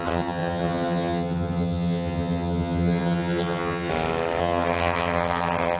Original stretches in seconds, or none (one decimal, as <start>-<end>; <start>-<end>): 3.9-4.4